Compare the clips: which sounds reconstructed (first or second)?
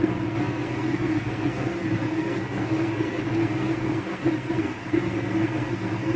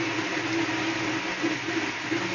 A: first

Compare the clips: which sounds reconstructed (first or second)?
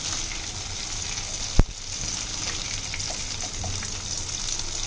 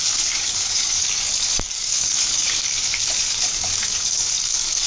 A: second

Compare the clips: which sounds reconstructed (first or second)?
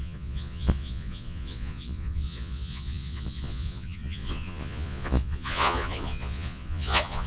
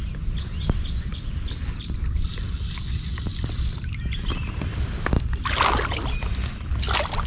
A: first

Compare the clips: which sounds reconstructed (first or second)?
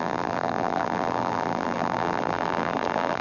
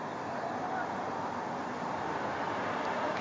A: first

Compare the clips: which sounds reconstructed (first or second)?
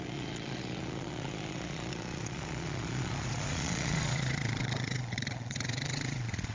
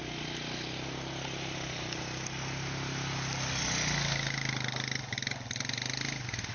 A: first